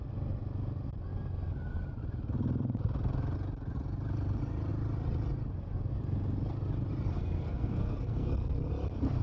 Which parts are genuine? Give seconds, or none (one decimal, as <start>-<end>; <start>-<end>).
0.0-7.1; 8.7-9.2